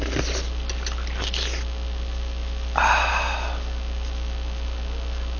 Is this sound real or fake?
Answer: real